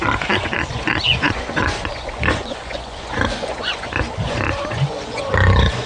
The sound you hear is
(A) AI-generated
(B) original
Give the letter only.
A